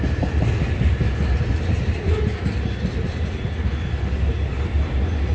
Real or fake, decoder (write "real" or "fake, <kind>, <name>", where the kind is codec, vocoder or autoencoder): real